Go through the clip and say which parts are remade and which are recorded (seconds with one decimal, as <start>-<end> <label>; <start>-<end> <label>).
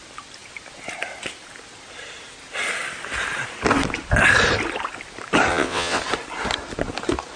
0.0-5.5 recorded; 5.5-6.0 remade; 6.0-7.4 recorded